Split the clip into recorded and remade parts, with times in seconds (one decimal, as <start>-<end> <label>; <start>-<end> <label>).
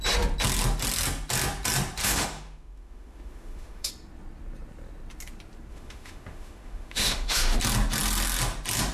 0.0-2.0 recorded; 2.0-3.9 remade; 3.9-5.7 recorded; 5.7-7.6 remade; 7.6-8.9 recorded